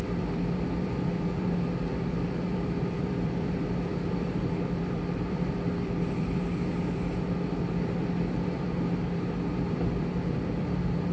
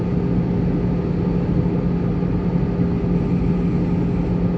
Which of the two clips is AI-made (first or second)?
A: first